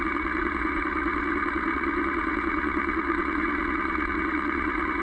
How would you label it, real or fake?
fake